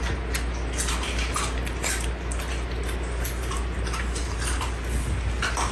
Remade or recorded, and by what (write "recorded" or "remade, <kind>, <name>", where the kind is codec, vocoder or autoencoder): recorded